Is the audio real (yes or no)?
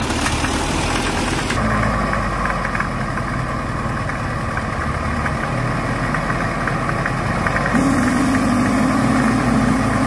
yes